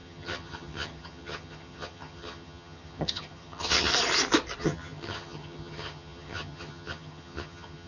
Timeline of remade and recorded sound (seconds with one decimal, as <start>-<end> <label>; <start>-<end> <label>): 0.0-3.9 remade; 3.9-4.6 recorded; 4.6-7.9 remade